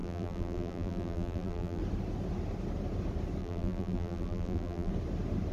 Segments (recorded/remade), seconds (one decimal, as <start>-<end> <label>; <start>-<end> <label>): 0.0-1.8 remade; 1.8-3.4 recorded; 3.4-4.9 remade; 4.9-5.5 recorded